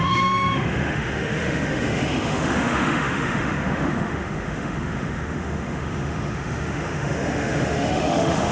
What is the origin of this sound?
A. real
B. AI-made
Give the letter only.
B